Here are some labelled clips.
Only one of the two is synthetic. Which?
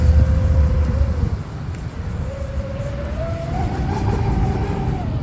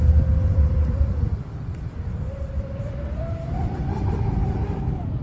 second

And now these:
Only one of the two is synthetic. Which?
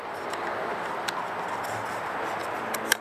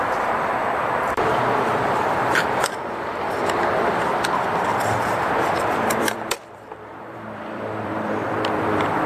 second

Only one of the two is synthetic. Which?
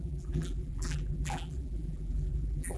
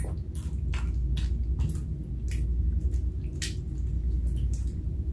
first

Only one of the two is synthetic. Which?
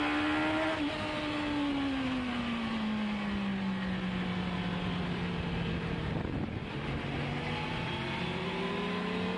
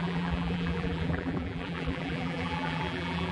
second